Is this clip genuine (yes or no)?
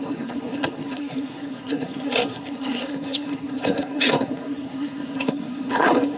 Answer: no